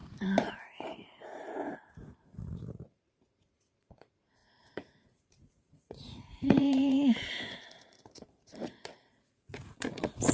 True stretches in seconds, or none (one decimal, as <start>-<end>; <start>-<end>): none